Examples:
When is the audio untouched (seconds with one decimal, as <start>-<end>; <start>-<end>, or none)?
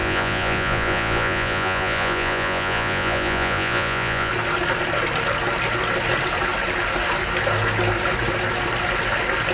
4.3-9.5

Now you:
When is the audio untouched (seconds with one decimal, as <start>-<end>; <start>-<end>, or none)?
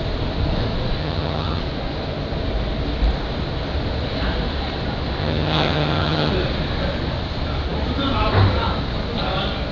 0.0-1.0; 1.6-5.2; 6.3-9.7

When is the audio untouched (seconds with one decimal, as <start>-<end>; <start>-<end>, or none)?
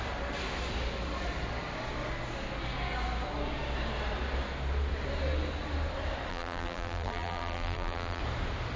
0.0-6.3; 8.2-8.8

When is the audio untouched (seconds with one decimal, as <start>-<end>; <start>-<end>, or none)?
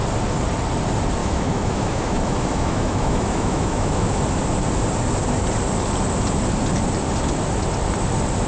0.0-1.2; 4.2-8.5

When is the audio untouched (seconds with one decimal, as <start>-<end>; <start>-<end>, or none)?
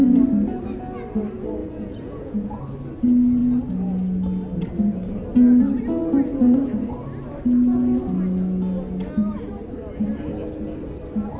0.0-1.6; 2.6-11.4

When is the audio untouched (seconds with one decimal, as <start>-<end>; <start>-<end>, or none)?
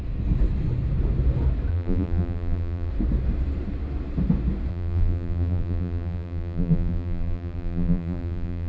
0.0-1.7; 2.9-4.7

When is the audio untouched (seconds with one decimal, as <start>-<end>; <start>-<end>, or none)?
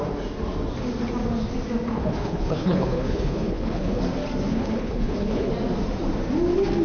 0.0-1.9; 4.0-4.5; 5.5-6.8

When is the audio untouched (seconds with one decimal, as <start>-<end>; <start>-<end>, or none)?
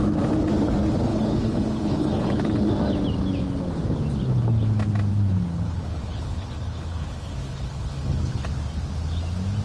0.0-1.1; 2.7-5.1; 8.2-9.6